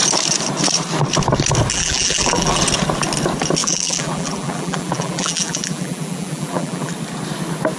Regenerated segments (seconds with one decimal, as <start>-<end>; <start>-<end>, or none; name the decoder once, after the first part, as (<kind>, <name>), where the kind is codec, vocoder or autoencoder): 1.7-2.6 (vocoder, BigVGAN v2); 3.6-6.9